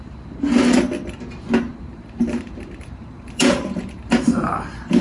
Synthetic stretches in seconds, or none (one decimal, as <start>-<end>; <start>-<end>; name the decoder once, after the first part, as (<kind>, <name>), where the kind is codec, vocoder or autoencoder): 1.7-5.0 (vocoder, BigVGAN v2)